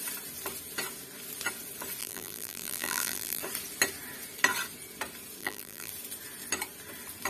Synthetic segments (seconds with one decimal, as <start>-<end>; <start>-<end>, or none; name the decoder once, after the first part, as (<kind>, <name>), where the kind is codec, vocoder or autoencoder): 2.0-3.4 (vocoder, BigVGAN v2); 5.4-5.9